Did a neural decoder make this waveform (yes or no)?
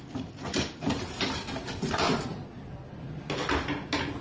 no